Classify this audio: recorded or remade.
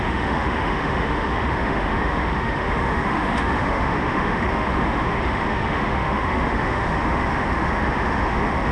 remade